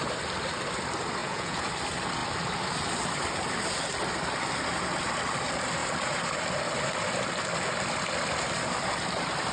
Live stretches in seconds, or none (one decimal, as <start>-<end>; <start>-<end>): 0.0-1.2; 1.7-9.5

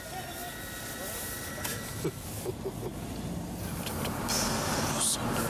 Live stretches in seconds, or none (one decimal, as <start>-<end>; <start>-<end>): 0.0-5.5

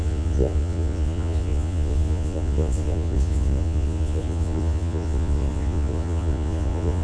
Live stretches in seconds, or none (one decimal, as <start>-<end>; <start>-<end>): none

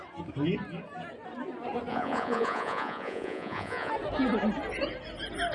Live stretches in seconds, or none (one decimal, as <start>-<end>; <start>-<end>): 0.0-1.9; 3.9-5.5

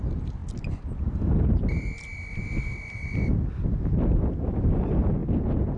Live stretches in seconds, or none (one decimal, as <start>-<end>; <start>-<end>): 0.0-5.8

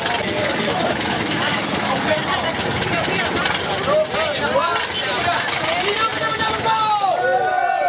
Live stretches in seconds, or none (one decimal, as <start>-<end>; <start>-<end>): 0.0-0.4; 2.2-7.9